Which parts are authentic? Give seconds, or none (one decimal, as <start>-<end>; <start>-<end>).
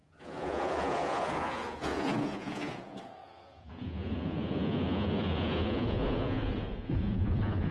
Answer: none